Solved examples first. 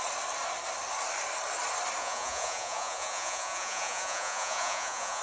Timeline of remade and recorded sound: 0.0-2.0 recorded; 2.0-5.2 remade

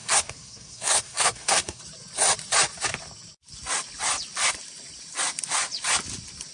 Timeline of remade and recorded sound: 0.0-1.8 remade; 1.8-6.5 recorded

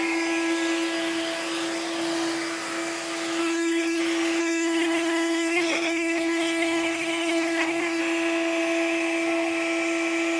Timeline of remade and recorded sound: 0.0-3.4 recorded; 3.4-4.0 remade; 4.0-4.4 recorded; 4.4-8.0 remade; 8.0-10.4 recorded

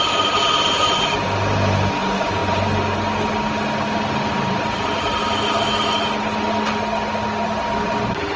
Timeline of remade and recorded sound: 0.0-8.4 recorded

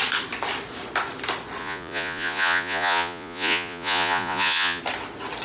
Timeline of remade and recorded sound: 0.0-1.6 recorded; 1.6-4.8 remade; 4.8-5.4 recorded

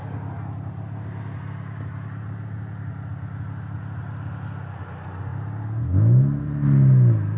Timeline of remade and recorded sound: 0.0-7.4 recorded

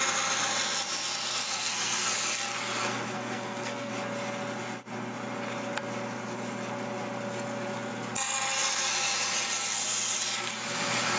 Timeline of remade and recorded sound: 0.0-1.3 recorded; 1.3-2.1 remade; 2.1-2.8 recorded; 2.8-3.9 remade; 3.9-11.2 recorded